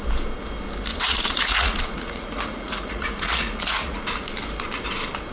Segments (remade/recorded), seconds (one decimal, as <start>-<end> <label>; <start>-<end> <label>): 0.0-0.9 recorded; 0.9-4.0 remade; 4.0-5.3 recorded